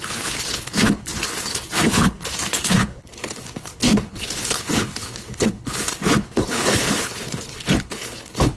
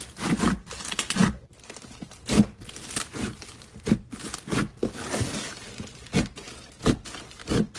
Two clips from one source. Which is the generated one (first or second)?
first